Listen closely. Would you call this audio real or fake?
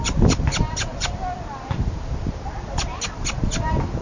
real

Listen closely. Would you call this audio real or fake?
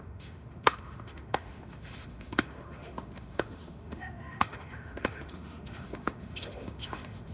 fake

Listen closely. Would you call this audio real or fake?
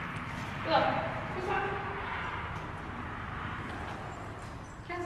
real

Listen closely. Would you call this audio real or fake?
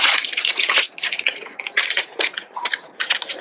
fake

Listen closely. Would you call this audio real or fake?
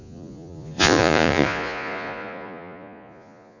fake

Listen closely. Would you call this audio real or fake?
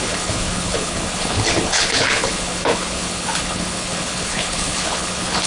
fake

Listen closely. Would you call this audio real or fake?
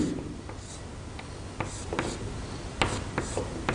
real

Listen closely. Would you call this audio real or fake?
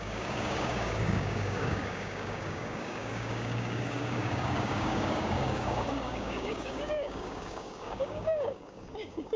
fake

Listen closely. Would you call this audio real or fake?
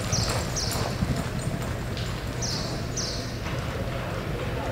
real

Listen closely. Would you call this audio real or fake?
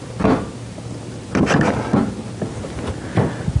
real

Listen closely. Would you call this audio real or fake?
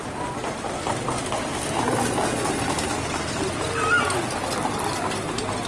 real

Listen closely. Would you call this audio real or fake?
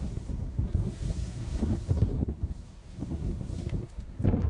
fake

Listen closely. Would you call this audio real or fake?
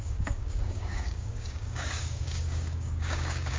fake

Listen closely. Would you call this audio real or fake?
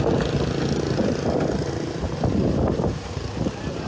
real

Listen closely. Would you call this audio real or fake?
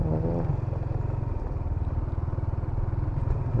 real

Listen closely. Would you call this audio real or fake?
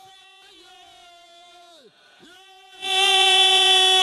fake